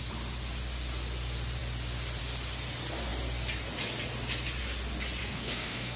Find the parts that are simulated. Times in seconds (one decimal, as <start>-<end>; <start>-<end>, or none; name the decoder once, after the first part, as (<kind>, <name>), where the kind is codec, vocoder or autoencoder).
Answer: 5.2-6.0 (codec, SNAC)